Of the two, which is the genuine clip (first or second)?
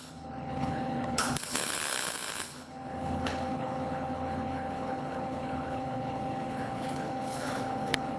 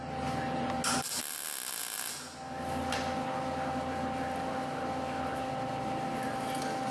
second